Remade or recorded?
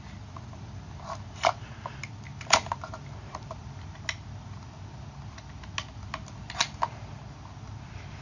recorded